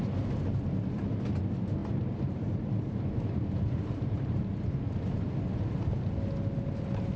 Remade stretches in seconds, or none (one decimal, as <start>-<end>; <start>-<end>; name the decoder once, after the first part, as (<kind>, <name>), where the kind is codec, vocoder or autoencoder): 1.8-4.4 (vocoder, BigVGAN v2)